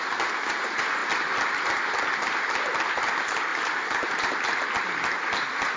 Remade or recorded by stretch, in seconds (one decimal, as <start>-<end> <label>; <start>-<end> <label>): 0.0-3.5 recorded; 3.5-4.3 remade; 4.3-5.8 recorded